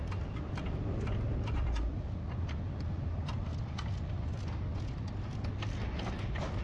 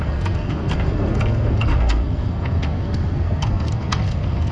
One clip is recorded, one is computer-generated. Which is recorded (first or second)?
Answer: first